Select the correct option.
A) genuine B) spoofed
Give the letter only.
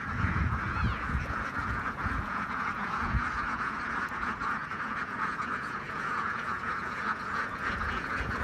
B